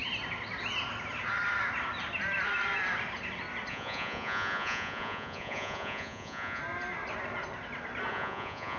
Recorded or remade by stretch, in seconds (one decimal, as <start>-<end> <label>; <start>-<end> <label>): 0.0-3.7 recorded; 3.7-6.6 remade; 6.6-8.1 recorded; 8.1-8.8 remade